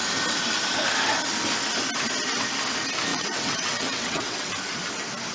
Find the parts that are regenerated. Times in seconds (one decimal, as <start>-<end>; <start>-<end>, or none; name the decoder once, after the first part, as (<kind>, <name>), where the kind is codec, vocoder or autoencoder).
3.1-4.5 (vocoder, WaveNeXt)

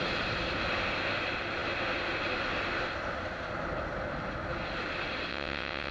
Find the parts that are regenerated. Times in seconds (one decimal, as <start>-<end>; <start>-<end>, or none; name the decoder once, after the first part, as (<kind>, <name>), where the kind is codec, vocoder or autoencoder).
5.3-5.9 (vocoder, WaveNeXt)

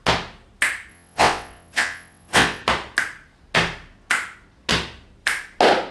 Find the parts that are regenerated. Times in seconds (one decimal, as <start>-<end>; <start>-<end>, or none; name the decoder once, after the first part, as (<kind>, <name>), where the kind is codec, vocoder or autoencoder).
0.9-2.6 (vocoder, WaveNeXt)